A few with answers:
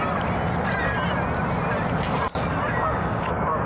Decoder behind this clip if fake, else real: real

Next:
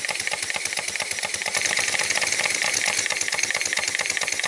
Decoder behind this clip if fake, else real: real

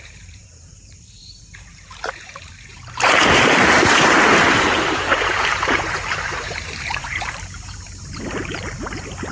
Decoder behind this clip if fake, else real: fake, vocoder, BigVGAN v2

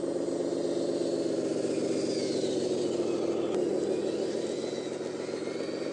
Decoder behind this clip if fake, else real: real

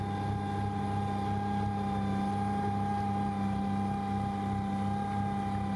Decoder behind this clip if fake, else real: real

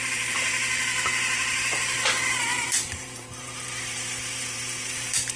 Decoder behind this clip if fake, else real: fake, vocoder, BigVGAN v2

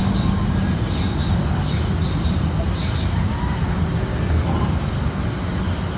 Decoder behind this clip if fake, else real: real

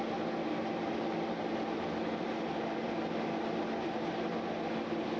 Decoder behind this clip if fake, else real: real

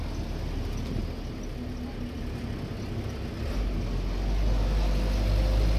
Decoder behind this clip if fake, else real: real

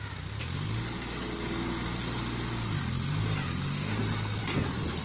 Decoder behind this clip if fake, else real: real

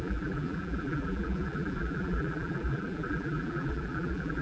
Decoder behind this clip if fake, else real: fake, vocoder, BigVGAN v2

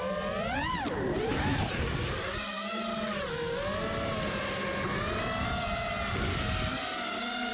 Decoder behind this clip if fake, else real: real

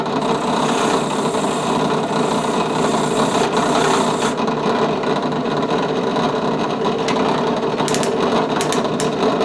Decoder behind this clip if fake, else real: real